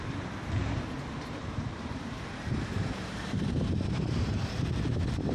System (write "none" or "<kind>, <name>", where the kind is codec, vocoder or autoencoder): vocoder, BigVGAN v2